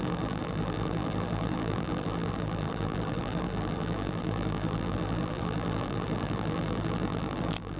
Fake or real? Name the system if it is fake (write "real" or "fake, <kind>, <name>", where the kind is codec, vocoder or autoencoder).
fake, vocoder, BigVGAN v2